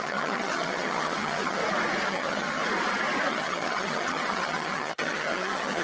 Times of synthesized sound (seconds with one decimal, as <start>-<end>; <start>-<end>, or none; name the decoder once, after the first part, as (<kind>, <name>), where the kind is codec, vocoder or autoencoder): 0.0-1.6 (vocoder, HiFi-GAN); 2.1-2.6; 3.3-5.8